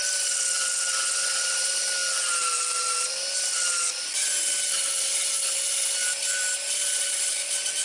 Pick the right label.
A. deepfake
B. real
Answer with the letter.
B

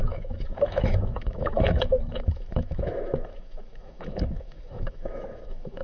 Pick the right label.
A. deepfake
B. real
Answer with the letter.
A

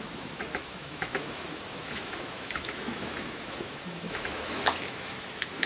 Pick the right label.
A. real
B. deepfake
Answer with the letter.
B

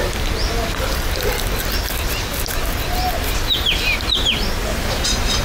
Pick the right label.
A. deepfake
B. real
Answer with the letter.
B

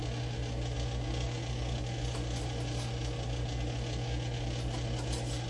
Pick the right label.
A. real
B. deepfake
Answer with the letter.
A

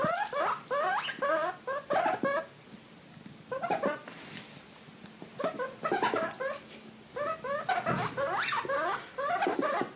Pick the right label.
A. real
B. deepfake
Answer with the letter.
A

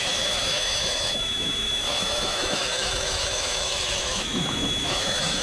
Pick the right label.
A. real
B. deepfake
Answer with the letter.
B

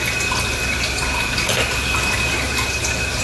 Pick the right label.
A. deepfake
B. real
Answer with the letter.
B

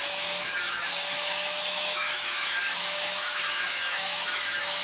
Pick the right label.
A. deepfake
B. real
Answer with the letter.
A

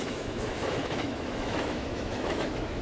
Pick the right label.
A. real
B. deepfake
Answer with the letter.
B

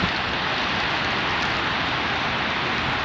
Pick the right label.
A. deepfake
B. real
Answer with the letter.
B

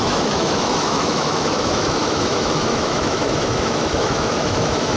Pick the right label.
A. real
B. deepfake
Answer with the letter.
B